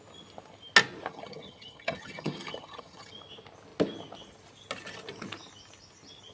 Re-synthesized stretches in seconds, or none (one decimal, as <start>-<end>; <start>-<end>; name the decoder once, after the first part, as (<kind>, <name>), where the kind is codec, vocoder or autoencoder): 1.1-3.1 (vocoder, HiFi-GAN)

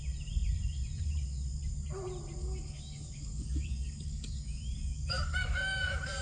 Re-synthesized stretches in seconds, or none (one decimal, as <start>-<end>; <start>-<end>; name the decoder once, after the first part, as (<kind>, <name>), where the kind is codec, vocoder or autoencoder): 2.4-6.2 (codec, DAC)